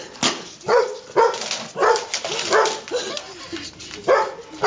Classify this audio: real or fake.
real